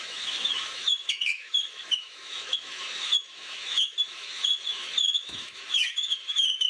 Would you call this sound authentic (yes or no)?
no